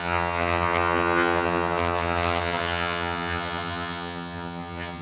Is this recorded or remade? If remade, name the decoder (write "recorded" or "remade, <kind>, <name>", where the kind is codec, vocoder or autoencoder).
remade, vocoder, HiFi-GAN